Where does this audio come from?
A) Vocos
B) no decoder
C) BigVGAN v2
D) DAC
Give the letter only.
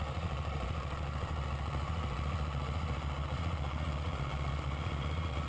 A